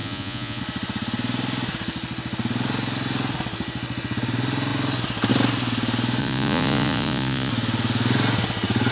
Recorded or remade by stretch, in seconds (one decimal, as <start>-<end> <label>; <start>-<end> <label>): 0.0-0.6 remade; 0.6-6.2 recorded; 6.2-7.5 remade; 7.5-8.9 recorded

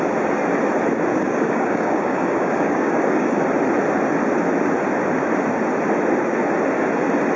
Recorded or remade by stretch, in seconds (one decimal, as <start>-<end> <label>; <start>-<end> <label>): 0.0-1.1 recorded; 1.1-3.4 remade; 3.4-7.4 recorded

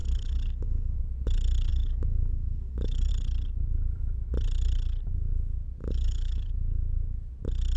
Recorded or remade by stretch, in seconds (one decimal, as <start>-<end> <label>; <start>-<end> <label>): 0.0-1.0 remade; 1.0-1.7 recorded; 1.7-3.1 remade; 3.1-5.8 recorded; 5.8-6.5 remade; 6.5-7.8 recorded

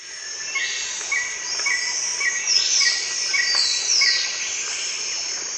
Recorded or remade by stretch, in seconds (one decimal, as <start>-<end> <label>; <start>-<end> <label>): 0.0-0.6 recorded; 0.6-1.1 remade; 1.1-2.1 recorded; 2.1-5.6 remade

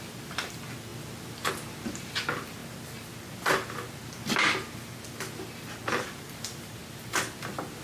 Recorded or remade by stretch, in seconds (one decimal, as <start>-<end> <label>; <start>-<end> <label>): 0.0-0.9 remade; 0.9-1.5 recorded; 1.5-2.6 remade; 2.6-6.0 recorded; 6.0-6.8 remade; 6.8-7.8 recorded

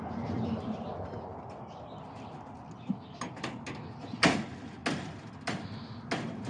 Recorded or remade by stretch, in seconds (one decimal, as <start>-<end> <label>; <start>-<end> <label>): 0.0-6.5 recorded

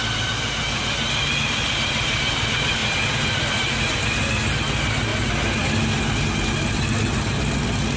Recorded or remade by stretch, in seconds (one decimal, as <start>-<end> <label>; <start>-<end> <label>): 0.0-8.0 recorded

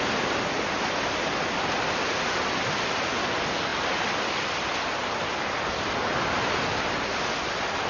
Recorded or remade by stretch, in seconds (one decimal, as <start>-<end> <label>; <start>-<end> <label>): 0.0-7.9 recorded